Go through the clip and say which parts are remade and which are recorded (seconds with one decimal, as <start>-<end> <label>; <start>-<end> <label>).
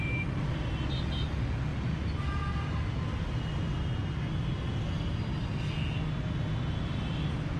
0.0-7.6 recorded